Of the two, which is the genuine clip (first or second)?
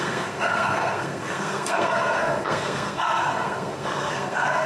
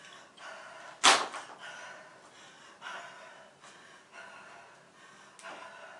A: second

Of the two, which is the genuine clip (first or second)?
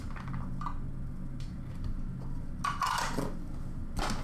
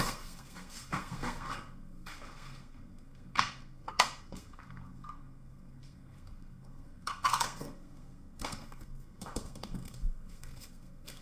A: first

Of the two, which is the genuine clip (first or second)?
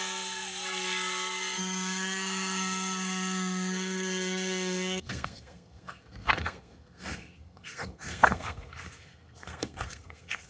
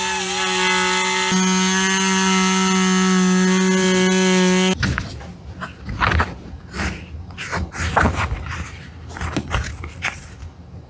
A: second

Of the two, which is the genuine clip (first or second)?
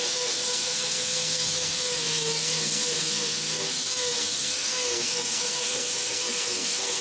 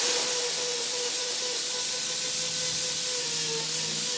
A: second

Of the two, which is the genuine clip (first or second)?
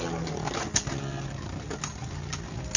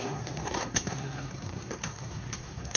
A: first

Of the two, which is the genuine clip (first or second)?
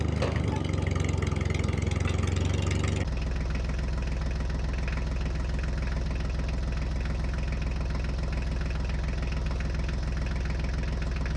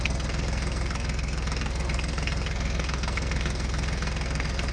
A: first